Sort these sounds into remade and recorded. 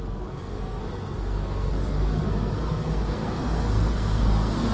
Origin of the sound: remade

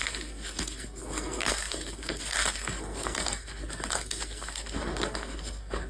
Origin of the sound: remade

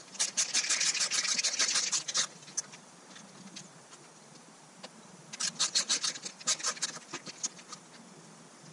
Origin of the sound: recorded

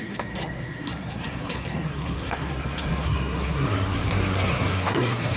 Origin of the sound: remade